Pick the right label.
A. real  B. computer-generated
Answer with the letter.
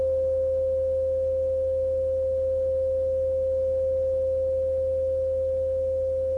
A